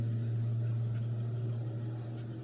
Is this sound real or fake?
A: real